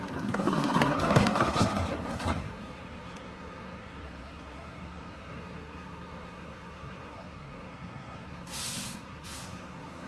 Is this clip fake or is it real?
fake